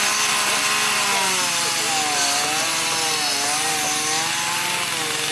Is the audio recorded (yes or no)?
yes